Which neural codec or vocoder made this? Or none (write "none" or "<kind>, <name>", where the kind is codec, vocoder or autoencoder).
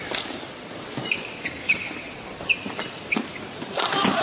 vocoder, BigVGAN v2